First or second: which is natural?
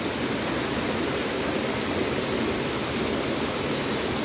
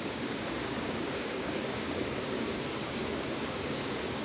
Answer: first